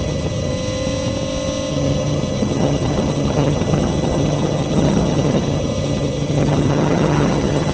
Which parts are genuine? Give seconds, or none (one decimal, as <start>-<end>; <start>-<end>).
0.5-1.7